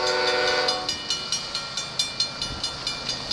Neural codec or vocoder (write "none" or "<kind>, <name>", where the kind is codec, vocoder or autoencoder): none